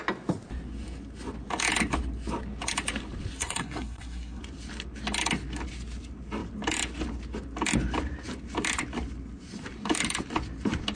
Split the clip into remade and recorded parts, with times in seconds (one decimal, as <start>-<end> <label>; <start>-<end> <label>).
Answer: 0.0-3.4 recorded; 3.4-4.4 remade; 4.4-11.0 recorded